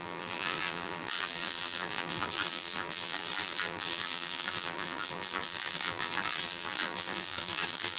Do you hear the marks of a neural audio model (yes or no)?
yes